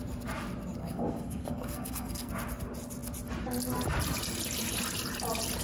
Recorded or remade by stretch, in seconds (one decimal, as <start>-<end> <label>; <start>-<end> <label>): 0.0-0.8 recorded; 0.8-2.3 remade; 2.3-5.6 recorded